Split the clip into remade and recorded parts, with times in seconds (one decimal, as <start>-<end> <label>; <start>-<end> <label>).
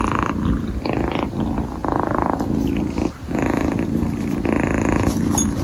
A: 0.0-5.6 recorded